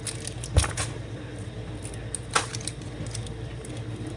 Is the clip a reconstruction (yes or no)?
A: no